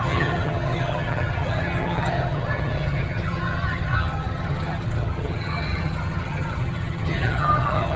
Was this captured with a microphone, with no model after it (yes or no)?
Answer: no